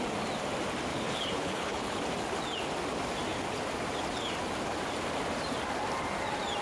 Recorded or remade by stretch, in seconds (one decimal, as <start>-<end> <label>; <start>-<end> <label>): 0.0-0.9 recorded; 0.9-2.0 remade; 2.0-6.6 recorded